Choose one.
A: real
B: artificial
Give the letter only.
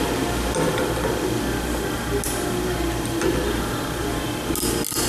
A